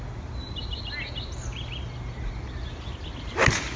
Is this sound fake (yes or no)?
no